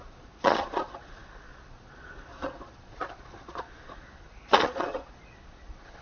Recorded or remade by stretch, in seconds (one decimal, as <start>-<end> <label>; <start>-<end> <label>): 0.0-6.0 remade